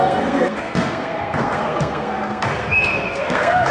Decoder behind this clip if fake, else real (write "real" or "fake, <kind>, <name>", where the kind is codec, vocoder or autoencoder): fake, codec, SNAC